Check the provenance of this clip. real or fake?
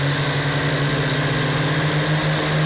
real